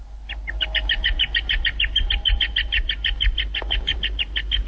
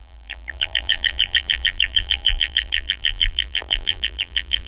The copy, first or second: second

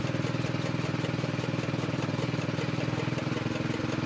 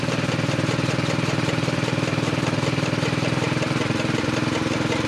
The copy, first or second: second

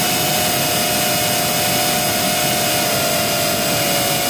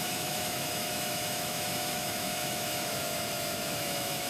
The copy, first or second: second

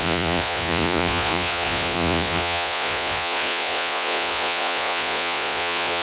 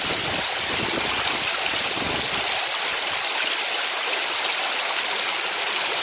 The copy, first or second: first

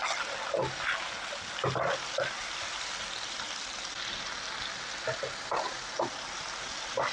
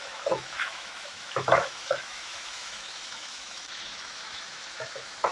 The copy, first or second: second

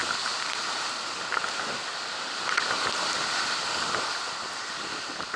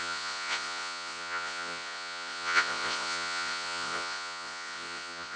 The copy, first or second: second